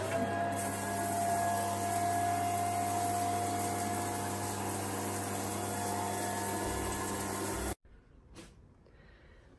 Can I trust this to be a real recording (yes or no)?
yes